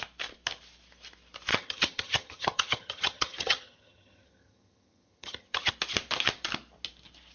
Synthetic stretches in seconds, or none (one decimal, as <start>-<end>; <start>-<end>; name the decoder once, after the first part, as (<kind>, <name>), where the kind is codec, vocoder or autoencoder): 1.5-5.7 (vocoder, HiFi-GAN)